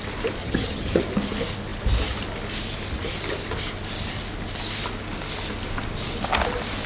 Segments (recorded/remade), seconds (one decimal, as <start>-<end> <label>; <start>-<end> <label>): 0.0-0.4 recorded; 0.4-1.0 remade; 1.0-6.9 recorded